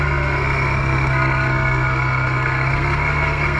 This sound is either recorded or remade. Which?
remade